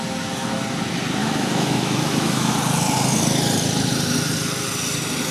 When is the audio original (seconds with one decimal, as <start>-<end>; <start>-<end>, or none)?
0.0-1.2; 2.5-5.3